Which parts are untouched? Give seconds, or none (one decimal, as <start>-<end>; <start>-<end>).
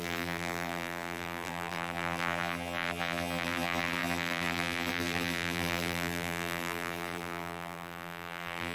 none